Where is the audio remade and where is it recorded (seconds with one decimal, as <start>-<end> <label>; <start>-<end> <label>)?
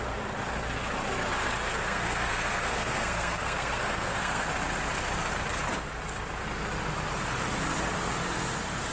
0.0-1.7 recorded; 1.7-4.5 remade; 4.5-8.9 recorded